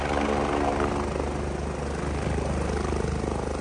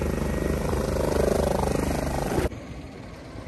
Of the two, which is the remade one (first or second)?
second